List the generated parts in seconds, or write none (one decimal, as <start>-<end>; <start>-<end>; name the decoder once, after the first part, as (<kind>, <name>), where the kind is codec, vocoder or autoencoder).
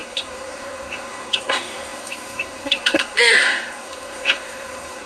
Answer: 0.0-5.1 (codec, SNAC)